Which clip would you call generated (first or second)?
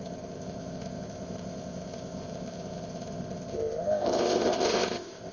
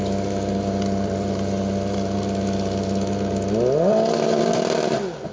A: first